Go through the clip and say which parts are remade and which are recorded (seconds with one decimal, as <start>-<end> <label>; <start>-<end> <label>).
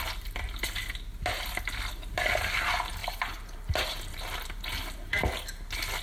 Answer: 0.0-3.0 recorded; 3.0-5.2 remade; 5.2-6.0 recorded